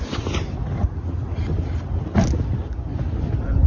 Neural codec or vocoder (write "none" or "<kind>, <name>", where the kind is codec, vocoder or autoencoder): none